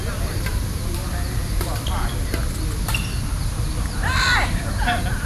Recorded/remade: recorded